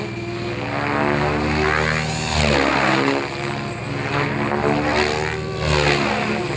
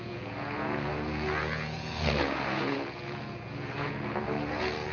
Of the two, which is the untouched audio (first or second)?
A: first